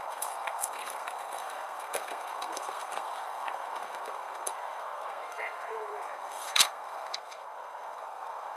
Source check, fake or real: fake